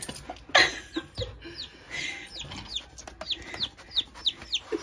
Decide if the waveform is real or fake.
real